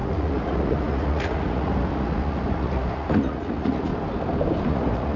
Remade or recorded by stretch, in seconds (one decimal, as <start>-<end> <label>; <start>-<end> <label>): 0.0-3.9 remade; 3.9-4.7 recorded; 4.7-5.2 remade